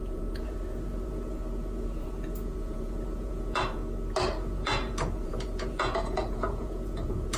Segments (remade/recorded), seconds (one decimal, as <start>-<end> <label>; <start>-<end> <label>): 0.0-3.8 remade; 3.8-4.4 recorded; 4.4-7.4 remade